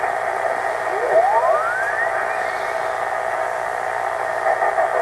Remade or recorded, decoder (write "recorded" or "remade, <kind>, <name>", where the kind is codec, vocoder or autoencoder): recorded